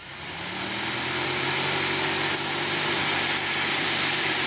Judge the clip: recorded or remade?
recorded